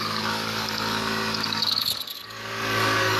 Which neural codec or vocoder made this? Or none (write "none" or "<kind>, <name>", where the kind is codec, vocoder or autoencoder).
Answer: codec, DAC